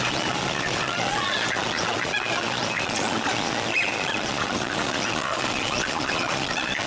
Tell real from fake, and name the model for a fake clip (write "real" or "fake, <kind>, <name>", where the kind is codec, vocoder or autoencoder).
fake, vocoder, Vocos